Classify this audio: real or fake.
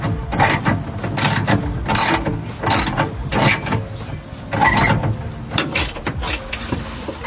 real